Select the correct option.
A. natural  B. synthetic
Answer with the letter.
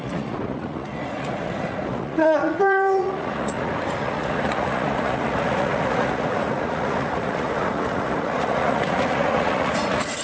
B